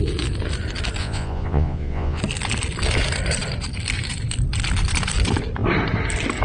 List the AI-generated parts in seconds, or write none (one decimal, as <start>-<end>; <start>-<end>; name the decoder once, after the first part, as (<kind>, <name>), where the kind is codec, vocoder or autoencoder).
1.0-2.2 (vocoder, Vocos)